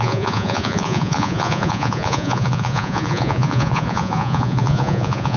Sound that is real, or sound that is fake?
fake